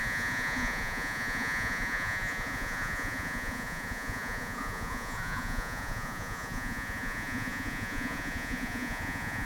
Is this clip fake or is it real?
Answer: fake